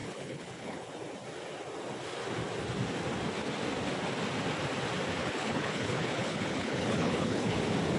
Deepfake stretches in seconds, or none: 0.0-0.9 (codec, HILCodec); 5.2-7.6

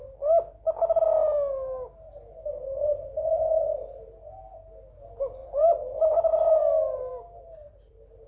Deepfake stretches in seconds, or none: 5.4-6.3 (vocoder, BigVGAN v2); 7.1-7.9

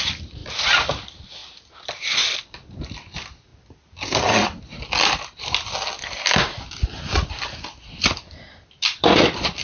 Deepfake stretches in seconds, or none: 0.0-0.4 (vocoder, BigVGAN v2); 0.9-1.4; 2.8-3.5; 8.0-9.6

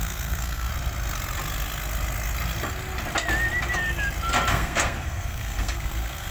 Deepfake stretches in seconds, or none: 0.0-0.7 (codec, SNAC); 4.5-6.3